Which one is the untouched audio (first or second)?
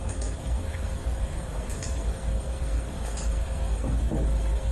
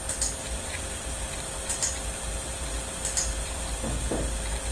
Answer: second